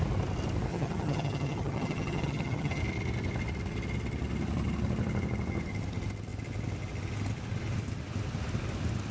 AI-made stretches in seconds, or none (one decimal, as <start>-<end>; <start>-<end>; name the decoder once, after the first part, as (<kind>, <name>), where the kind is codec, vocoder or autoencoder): 0.7-2.8 (vocoder, HiFi-GAN)